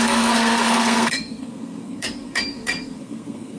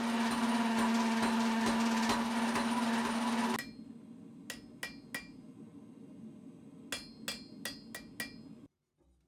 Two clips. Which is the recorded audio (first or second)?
second